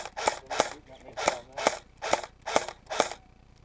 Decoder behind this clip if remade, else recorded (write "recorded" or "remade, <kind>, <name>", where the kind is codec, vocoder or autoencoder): recorded